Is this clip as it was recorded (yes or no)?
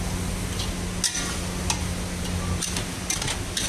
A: yes